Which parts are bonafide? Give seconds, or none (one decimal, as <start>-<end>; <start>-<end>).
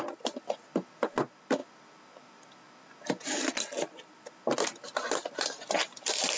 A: 0.0-6.4